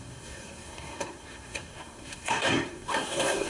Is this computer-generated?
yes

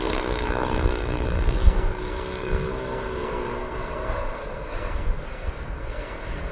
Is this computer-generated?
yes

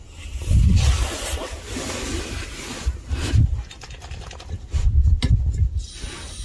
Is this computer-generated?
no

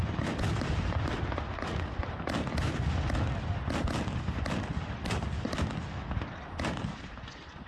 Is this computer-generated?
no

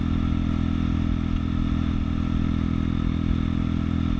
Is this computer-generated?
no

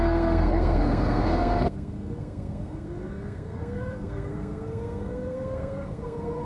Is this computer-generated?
yes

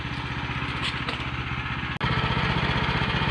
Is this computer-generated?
no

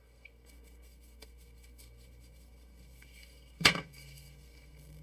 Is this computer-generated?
yes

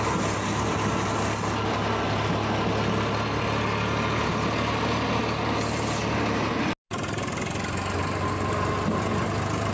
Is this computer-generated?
no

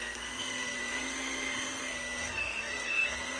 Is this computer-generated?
yes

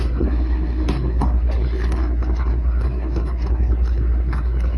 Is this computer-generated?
yes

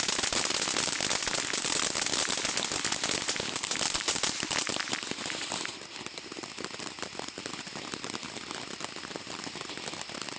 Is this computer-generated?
no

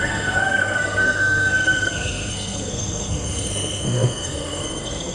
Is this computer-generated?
yes